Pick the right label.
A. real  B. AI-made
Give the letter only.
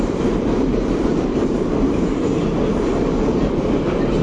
B